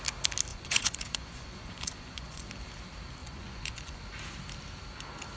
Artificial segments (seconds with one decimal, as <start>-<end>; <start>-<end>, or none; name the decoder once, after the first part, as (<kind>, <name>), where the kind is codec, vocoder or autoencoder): 0.5-2.5 (vocoder, Vocos); 3.2-4.0